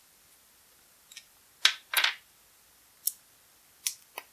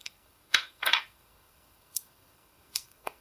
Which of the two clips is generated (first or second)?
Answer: second